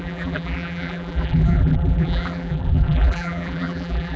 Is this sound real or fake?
fake